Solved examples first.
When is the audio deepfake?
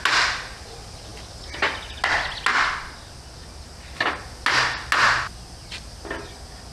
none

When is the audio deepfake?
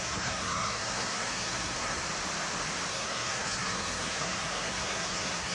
0.0-2.0 (codec, SNAC); 2.9-5.5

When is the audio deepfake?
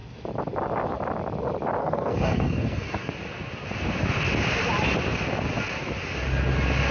1.8-3.1 (codec, SNAC)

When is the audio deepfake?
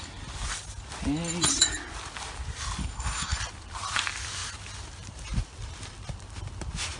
2.8-3.4 (codec, SNAC)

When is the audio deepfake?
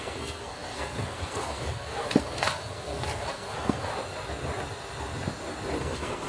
0.0-3.9 (codec, SNAC); 5.8-6.3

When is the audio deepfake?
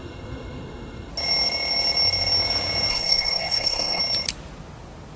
0.0-1.1 (codec, SNAC); 2.9-4.0